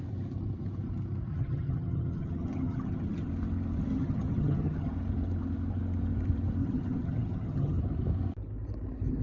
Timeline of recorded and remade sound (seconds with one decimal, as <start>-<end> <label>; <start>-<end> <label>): 0.0-1.3 recorded; 1.3-3.3 remade; 3.3-3.9 recorded; 3.9-4.9 remade; 4.9-6.6 recorded; 6.6-7.8 remade; 7.8-9.2 recorded